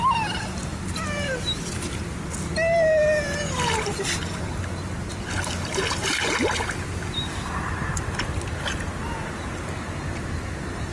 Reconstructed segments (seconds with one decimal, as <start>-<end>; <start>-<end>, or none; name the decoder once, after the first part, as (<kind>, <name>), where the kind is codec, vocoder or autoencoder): none